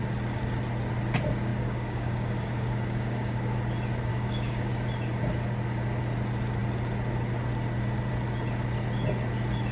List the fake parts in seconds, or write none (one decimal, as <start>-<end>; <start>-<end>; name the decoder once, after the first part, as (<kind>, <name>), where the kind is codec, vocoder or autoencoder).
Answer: 1.5-3.6 (codec, DAC); 4.1-4.7